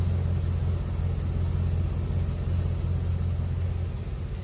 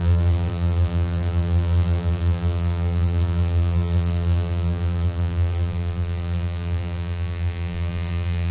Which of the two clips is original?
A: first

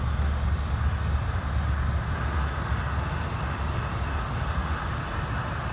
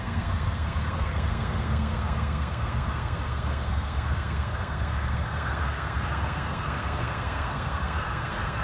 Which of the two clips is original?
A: first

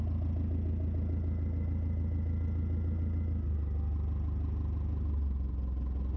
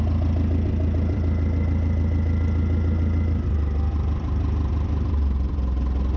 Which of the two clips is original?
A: first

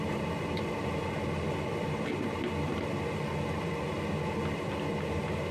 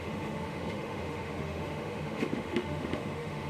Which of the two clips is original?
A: first